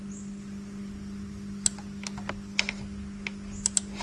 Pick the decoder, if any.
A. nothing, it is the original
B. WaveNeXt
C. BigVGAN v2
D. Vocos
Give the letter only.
A